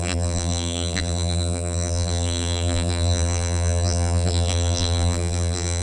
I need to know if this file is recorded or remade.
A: remade